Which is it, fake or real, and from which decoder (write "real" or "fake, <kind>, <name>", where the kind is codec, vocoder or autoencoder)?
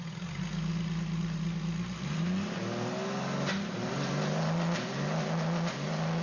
real